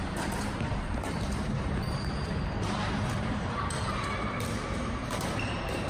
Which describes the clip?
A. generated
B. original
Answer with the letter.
A